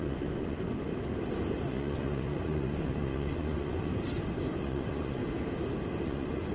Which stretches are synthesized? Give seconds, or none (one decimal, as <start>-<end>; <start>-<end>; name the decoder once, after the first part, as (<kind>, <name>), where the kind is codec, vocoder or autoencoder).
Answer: 0.0-0.9 (vocoder, Vocos); 1.7-3.9; 4.6-5.2; 6.0-6.5